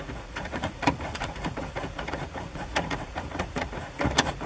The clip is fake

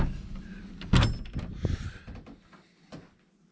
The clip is real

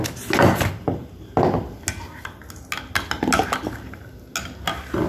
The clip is real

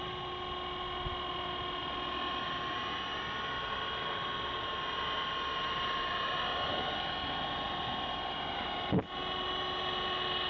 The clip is real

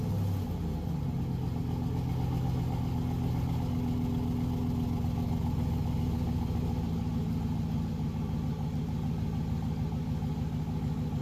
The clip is real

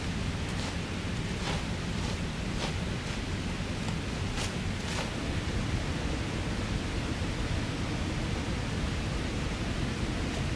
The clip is real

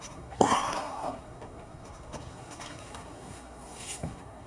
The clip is fake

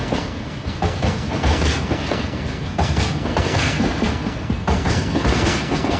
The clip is fake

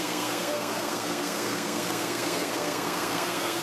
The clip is fake